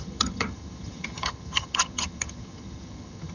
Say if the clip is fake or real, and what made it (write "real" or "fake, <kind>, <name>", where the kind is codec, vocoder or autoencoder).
fake, vocoder, HiFi-GAN